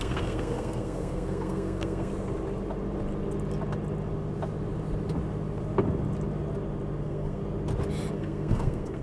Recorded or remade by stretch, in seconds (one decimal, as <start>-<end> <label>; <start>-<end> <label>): 0.0-2.1 remade; 2.1-7.0 recorded; 7.0-7.4 remade; 7.4-8.1 recorded; 8.1-9.0 remade